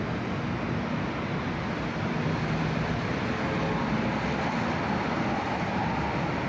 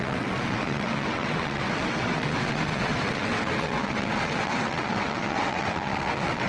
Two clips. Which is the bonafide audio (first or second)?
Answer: first